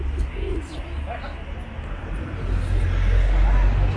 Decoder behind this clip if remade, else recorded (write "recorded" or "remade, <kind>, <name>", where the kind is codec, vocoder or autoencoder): recorded